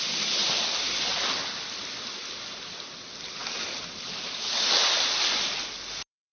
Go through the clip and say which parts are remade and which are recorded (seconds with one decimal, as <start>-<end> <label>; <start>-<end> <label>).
0.0-6.3 recorded